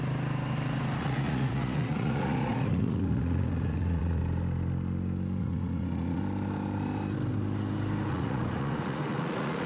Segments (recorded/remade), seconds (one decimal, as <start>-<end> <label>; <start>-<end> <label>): 0.0-1.0 recorded; 1.0-4.2 remade; 4.2-5.4 recorded; 5.4-6.2 remade; 6.2-8.1 recorded; 8.1-9.7 remade